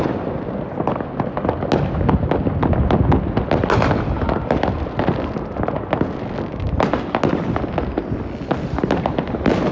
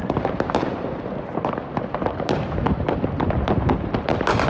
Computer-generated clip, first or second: second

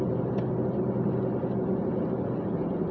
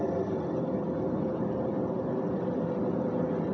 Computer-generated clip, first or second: second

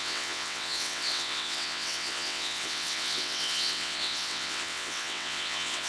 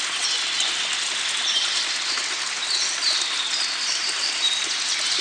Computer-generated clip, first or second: first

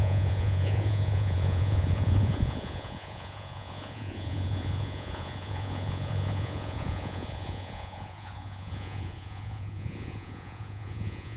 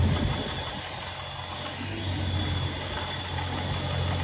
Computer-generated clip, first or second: first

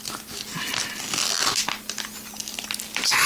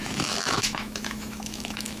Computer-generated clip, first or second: second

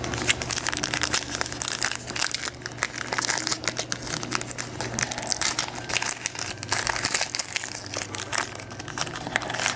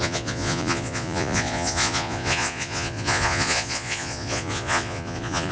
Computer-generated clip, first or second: second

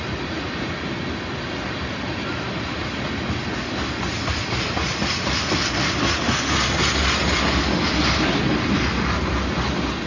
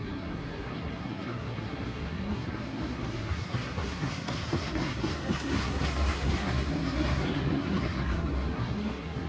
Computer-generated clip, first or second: second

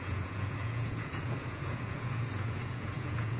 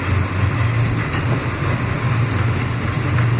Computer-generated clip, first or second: first